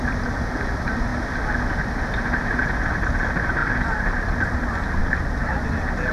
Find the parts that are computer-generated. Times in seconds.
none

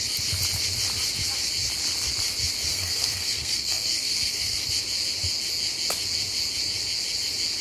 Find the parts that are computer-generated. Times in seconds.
2.7-4.7 (codec, SNAC)

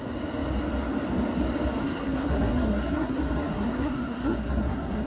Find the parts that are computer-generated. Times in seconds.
1.8-5.1 (codec, SNAC)